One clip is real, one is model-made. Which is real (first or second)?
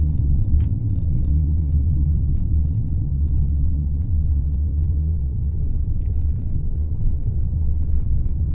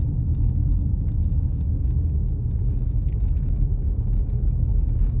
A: second